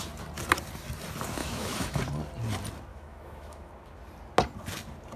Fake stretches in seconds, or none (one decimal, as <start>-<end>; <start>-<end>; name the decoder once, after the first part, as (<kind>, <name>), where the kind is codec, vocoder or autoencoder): 1.4-2.0 (autoencoder, DAC-VAE); 2.9-3.7